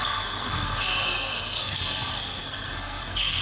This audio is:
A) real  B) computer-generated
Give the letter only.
B